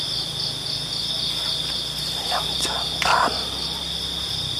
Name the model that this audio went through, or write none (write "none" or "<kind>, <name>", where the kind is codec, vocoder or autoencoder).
none